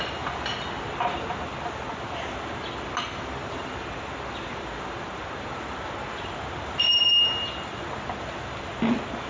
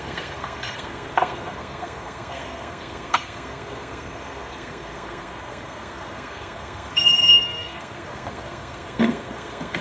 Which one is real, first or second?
first